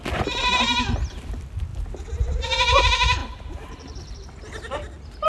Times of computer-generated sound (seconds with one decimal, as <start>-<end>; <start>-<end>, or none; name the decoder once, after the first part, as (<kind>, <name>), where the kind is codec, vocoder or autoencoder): 3.2-4.0 (vocoder, BigVGAN v2)